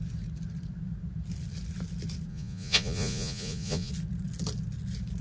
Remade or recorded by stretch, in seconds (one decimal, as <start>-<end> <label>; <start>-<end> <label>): 0.0-2.3 recorded; 2.3-3.9 remade; 3.9-5.2 recorded